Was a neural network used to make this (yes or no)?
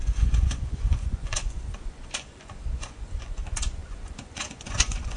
yes